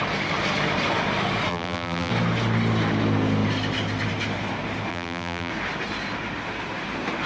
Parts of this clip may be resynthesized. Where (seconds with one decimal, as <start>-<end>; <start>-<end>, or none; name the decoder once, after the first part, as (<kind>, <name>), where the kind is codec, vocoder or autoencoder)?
1.5-2.1 (vocoder, BigVGAN v2); 4.9-5.5